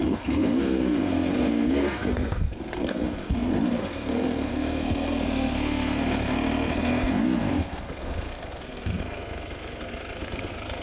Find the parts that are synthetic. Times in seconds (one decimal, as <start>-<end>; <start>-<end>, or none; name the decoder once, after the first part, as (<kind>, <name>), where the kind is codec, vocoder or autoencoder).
0.0-10.8 (codec, SNAC)